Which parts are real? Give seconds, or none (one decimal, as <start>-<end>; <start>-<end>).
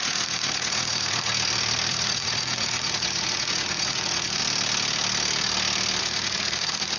1.3-1.9; 4.4-6.0